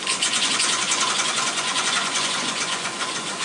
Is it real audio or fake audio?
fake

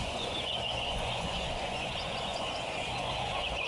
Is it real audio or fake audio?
fake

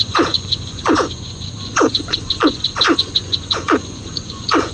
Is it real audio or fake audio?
fake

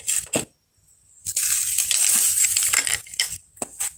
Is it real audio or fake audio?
real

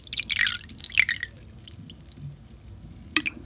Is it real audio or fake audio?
real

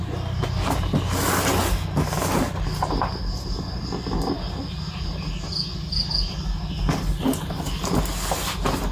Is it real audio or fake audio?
real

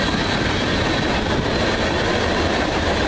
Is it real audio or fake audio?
real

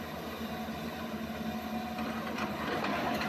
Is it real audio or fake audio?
real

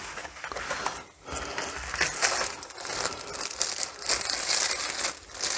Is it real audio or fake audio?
real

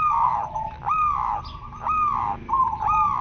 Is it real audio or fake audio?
real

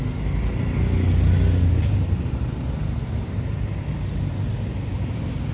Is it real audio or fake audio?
real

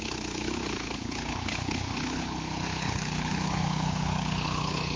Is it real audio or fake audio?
fake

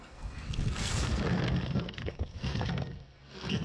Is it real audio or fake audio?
fake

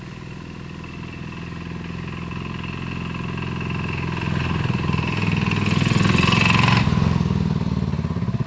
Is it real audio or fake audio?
real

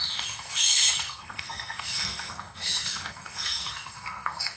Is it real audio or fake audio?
fake